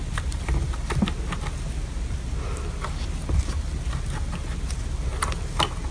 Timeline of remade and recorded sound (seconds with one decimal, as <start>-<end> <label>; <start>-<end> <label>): 0.0-5.9 recorded